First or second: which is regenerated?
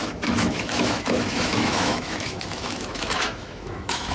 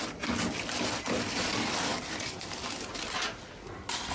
first